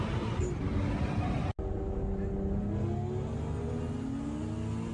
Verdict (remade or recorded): recorded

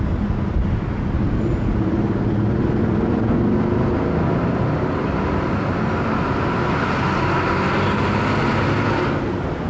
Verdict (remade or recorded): recorded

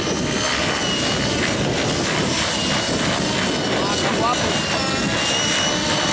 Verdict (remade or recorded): recorded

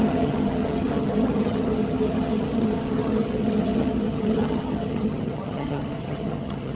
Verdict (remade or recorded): remade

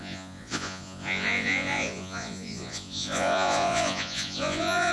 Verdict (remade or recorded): remade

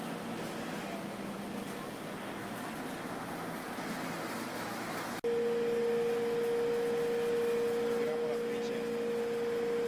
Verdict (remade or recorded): recorded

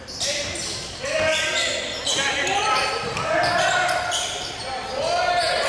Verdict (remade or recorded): recorded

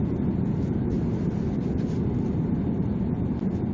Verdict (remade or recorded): recorded